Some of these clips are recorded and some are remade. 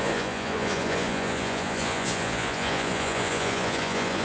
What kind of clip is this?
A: remade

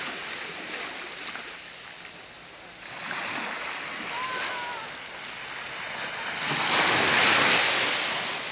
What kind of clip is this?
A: recorded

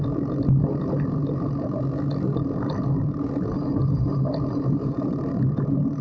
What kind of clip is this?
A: recorded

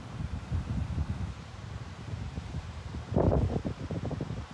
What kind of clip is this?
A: remade